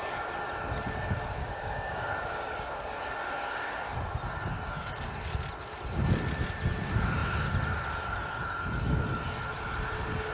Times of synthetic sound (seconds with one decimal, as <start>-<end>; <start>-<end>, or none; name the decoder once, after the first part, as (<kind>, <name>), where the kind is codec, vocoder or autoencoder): 1.4-3.0 (codec, DAC)